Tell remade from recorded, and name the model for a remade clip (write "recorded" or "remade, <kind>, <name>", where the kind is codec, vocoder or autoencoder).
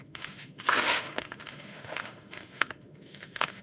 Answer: remade, autoencoder, DAC-VAE